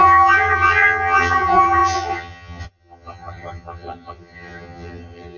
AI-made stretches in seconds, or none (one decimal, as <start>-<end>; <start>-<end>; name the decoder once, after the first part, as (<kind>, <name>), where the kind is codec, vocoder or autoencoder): 0.0-5.4 (vocoder, HiFi-GAN)